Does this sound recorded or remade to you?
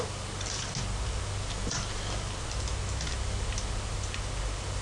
recorded